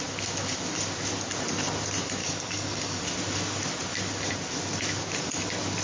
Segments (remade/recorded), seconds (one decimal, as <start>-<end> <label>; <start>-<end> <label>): 0.0-2.2 recorded; 2.2-3.0 remade; 3.0-5.8 recorded

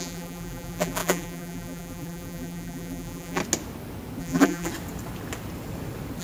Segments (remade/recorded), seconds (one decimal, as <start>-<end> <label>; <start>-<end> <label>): 0.0-3.4 remade; 3.4-4.2 recorded; 4.2-4.7 remade; 4.7-6.2 recorded

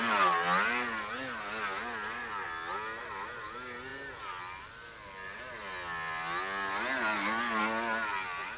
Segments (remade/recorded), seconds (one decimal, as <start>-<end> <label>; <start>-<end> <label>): 0.0-8.6 recorded